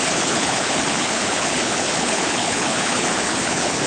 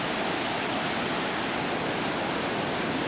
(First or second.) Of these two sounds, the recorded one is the second